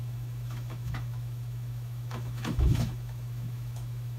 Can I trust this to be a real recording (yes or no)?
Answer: no